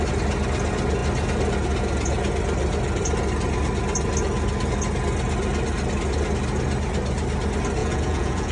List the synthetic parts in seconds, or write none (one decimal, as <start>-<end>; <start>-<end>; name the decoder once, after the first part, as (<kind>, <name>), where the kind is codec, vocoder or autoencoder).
7.8-8.5 (vocoder, Vocos)